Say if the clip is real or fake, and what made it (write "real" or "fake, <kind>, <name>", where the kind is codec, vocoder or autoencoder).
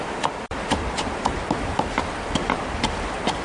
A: real